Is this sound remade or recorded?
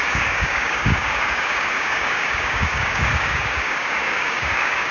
remade